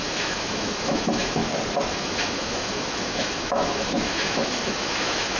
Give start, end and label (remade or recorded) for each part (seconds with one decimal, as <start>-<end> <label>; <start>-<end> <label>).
0.0-1.4 remade; 1.4-1.9 recorded; 1.9-5.4 remade